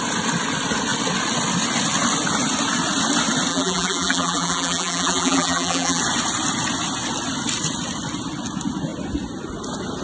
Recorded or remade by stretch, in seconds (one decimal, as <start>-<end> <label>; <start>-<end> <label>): 0.0-3.5 recorded; 3.5-6.0 remade; 6.0-10.0 recorded